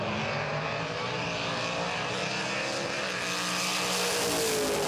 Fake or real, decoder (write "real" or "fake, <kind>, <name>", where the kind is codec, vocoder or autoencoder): real